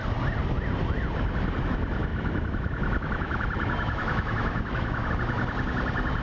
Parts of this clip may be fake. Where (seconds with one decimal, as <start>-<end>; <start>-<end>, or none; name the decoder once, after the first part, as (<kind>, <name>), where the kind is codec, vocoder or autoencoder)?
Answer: 2.1-5.1 (autoencoder, DAC-VAE)